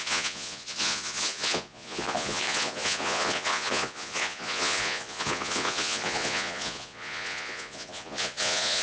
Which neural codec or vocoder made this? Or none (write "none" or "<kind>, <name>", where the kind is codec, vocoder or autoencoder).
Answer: vocoder, Vocos